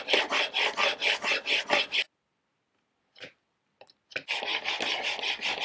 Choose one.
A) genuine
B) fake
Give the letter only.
A